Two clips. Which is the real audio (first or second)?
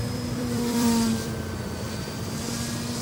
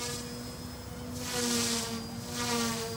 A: second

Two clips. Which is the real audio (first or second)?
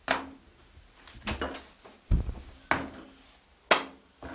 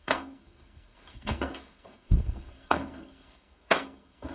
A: first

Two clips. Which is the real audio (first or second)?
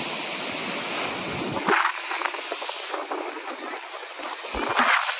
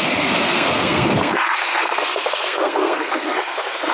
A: first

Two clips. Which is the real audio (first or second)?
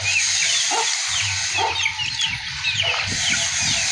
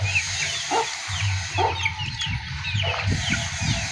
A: second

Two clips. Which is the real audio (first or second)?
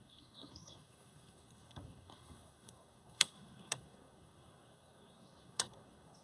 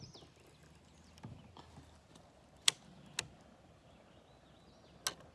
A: second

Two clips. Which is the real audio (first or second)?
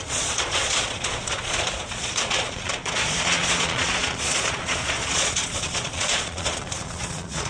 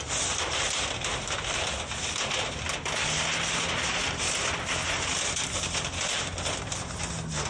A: second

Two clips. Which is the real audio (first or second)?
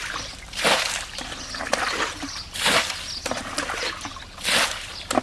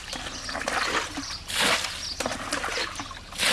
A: second